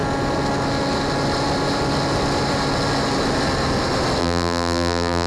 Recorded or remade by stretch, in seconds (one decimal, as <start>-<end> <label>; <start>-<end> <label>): 0.0-4.2 recorded; 4.2-5.3 remade